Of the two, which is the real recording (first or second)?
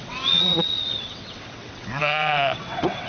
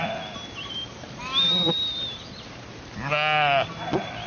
second